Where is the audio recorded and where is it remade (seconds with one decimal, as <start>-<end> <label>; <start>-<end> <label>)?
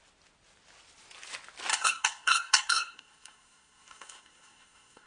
0.0-1.7 recorded; 1.7-5.1 remade